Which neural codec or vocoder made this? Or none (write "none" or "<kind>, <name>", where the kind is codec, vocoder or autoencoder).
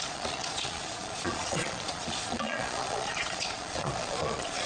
vocoder, Vocos